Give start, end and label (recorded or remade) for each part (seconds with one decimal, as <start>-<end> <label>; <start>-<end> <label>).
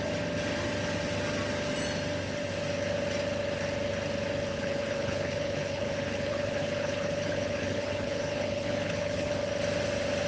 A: 0.0-4.5 recorded; 4.5-9.3 remade; 9.3-10.3 recorded